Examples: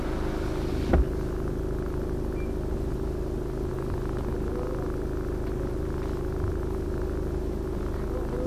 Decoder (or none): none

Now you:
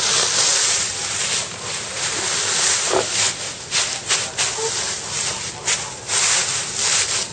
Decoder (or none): none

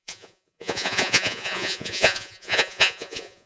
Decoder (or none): vocoder, Vocos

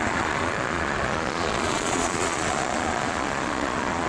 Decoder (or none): vocoder, Vocos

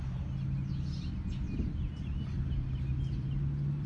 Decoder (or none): none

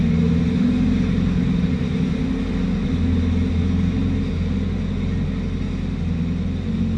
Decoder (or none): none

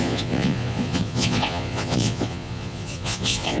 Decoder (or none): vocoder, Vocos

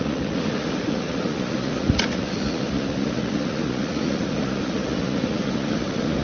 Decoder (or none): vocoder, Vocos